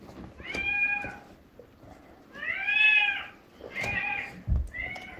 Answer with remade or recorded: recorded